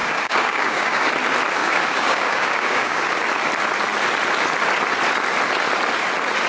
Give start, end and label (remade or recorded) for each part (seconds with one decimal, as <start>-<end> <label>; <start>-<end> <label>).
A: 0.0-1.1 remade; 1.1-1.6 recorded; 1.6-3.0 remade; 3.0-6.5 recorded